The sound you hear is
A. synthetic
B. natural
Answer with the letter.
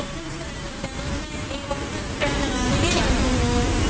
B